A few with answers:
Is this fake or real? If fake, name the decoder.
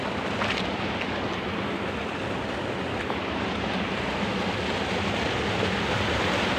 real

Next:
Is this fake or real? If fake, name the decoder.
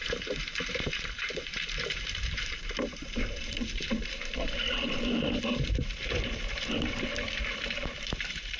fake, vocoder, BigVGAN v2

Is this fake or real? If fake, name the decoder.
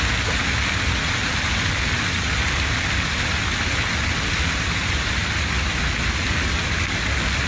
real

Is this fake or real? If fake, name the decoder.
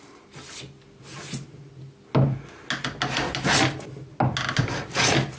real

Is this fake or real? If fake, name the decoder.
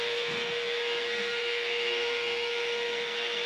fake, codec, SNAC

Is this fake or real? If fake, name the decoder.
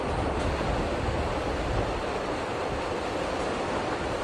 real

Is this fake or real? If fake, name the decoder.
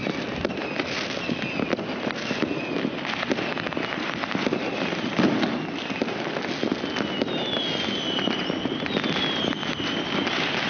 real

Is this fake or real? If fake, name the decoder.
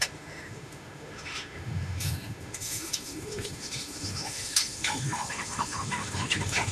fake, autoencoder, DAC-VAE